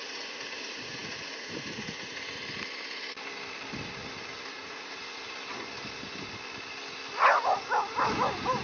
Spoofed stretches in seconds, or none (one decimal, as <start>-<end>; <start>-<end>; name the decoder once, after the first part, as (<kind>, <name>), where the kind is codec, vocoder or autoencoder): 0.0-2.4 (vocoder, Vocos); 4.5-5.0